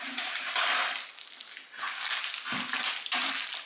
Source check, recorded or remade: recorded